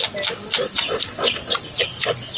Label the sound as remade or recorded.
recorded